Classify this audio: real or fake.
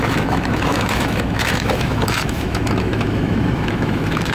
fake